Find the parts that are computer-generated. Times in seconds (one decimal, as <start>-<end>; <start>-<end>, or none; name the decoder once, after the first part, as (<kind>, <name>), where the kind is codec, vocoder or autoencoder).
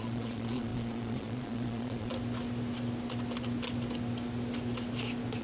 0.0-2.1 (vocoder, Vocos)